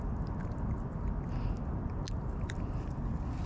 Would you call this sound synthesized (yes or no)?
no